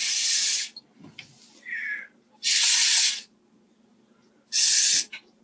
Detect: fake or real real